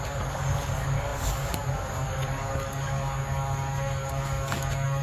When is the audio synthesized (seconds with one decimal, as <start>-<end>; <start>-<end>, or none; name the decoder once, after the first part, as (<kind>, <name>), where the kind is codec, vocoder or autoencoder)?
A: 0.0-5.0 (codec, DAC)